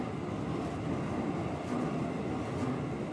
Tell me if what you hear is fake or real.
real